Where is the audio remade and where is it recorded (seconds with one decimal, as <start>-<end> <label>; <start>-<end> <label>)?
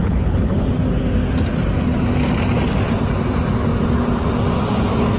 0.0-0.7 remade; 0.7-5.2 recorded